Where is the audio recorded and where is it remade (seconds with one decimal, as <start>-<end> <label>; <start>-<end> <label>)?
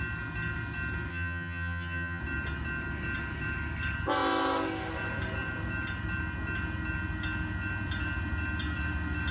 0.0-1.1 recorded; 1.1-2.2 remade; 2.2-9.3 recorded